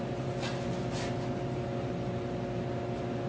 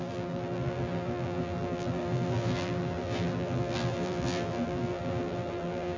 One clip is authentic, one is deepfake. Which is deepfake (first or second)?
second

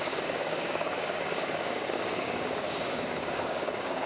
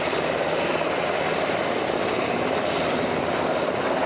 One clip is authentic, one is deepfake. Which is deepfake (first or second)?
first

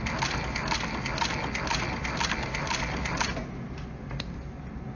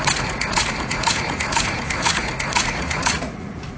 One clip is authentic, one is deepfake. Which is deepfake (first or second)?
second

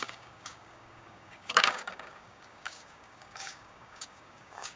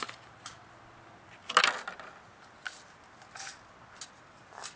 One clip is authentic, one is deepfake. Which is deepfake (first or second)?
first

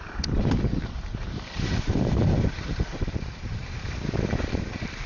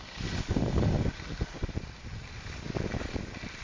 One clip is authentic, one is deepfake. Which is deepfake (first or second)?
first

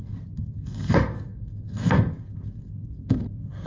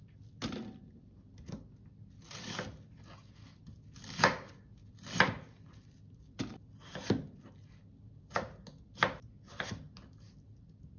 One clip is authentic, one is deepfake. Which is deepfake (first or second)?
first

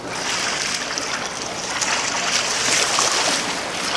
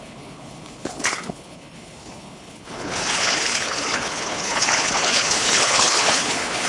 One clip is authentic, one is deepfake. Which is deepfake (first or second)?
second